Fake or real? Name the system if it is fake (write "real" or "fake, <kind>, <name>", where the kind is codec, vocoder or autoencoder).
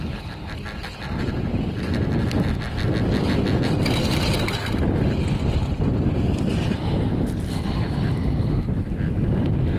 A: real